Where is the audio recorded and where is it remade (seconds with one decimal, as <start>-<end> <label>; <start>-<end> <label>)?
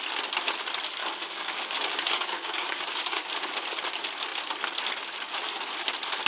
0.0-1.0 recorded; 1.0-3.3 remade; 3.3-6.3 recorded